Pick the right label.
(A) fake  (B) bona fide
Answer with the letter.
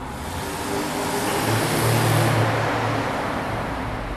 B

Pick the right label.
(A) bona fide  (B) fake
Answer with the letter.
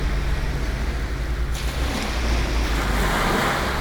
A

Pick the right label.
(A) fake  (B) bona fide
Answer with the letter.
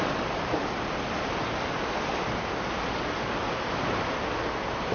B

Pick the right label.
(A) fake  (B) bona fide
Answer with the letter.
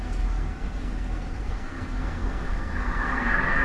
A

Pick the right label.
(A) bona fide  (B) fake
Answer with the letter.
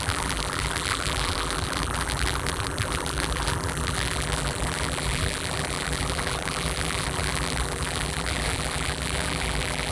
B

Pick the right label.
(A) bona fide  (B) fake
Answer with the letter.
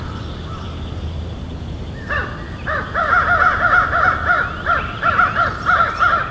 A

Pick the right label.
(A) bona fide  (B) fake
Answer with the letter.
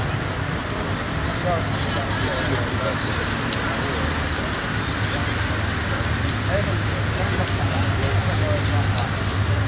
A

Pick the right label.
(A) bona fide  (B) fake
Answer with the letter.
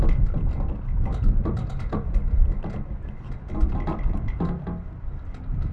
A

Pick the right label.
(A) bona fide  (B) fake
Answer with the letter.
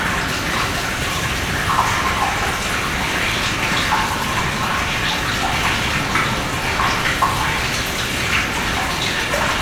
A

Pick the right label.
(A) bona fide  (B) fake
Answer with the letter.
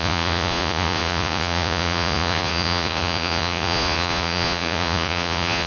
B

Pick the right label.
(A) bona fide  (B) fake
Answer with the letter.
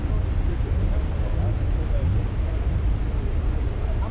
A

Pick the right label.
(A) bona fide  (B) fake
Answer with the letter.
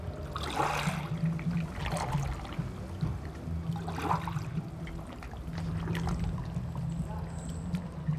A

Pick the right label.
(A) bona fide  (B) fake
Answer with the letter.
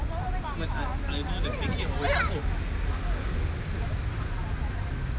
A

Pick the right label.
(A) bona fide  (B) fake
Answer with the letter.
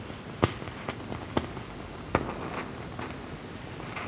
A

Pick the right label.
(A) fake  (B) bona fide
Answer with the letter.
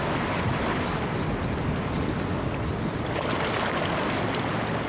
B